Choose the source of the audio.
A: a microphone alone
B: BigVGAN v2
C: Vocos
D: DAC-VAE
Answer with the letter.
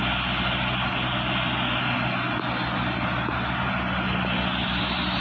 A